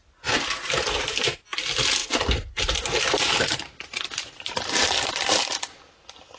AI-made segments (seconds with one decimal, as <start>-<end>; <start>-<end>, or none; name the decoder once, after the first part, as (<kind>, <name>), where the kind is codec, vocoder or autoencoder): none